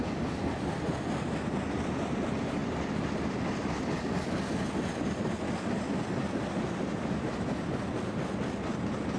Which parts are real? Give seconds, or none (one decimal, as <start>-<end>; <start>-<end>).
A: 0.0-9.2